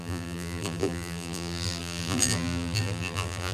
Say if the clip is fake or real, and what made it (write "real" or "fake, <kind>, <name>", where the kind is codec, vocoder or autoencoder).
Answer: fake, vocoder, BigVGAN v2